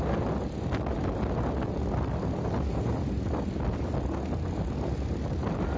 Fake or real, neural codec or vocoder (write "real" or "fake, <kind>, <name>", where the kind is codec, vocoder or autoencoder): real